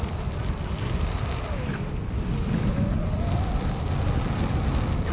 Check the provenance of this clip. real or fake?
real